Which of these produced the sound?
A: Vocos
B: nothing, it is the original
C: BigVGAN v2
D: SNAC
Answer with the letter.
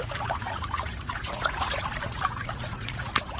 A